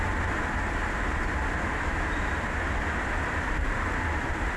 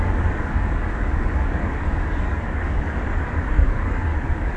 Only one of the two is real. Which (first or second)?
first